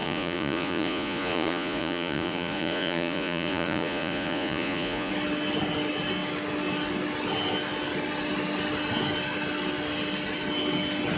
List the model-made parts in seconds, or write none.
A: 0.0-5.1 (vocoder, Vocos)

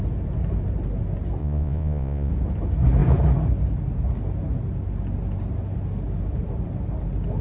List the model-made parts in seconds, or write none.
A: 1.4-2.3 (vocoder, Vocos)